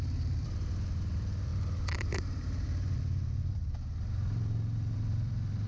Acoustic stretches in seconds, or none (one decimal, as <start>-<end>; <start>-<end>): 3.6-4.1